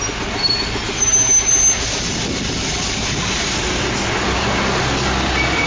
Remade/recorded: recorded